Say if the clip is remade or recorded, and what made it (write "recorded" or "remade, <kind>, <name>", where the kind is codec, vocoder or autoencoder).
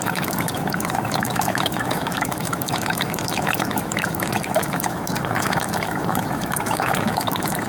remade, autoencoder, DAC-VAE